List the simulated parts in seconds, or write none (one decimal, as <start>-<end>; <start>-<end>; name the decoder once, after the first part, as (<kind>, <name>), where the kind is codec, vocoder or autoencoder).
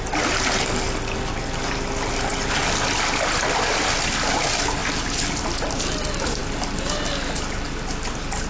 none